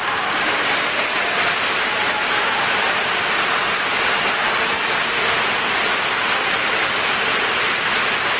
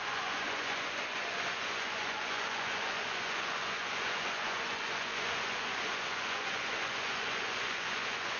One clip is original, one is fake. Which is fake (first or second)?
second